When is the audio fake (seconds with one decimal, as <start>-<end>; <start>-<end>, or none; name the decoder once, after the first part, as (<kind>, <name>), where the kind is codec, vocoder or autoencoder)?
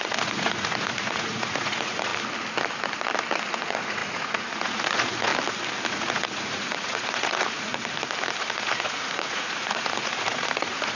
0.0-2.1 (vocoder, Vocos); 3.5-5.3; 5.9-7.7; 8.4-11.0